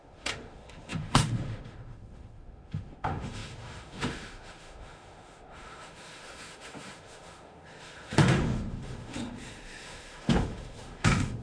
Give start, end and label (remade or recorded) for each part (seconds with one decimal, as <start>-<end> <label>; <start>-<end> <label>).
0.0-11.4 remade